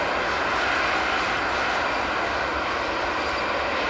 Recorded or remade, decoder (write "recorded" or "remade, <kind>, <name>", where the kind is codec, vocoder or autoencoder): recorded